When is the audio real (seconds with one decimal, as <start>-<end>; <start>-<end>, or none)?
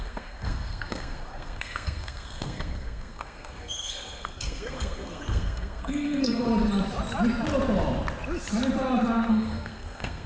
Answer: 6.5-9.3